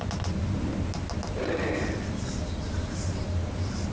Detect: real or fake real